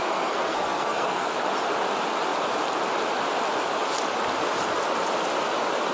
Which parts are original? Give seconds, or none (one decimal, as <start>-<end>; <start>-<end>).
1.4-5.9